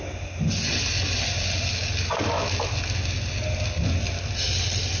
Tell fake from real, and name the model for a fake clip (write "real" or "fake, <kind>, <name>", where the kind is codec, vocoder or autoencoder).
real